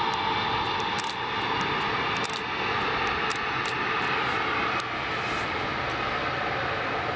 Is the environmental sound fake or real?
real